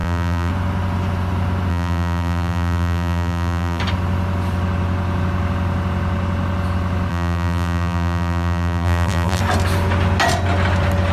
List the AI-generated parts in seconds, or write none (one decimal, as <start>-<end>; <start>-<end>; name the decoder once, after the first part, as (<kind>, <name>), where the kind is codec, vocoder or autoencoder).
0.0-0.5 (vocoder, BigVGAN v2); 1.7-3.8; 7.1-9.4